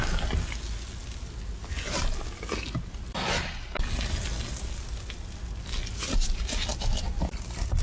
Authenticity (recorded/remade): recorded